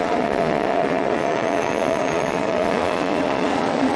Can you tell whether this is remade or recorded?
remade